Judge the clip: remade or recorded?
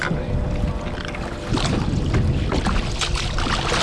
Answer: recorded